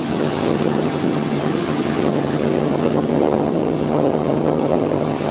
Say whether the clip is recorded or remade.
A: remade